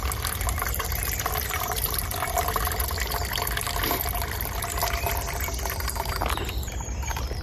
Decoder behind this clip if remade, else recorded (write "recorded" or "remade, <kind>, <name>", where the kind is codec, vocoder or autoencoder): recorded